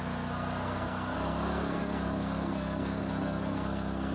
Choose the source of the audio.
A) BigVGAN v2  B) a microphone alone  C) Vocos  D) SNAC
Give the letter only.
D